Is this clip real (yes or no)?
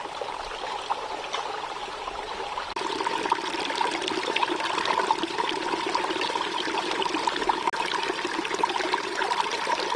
yes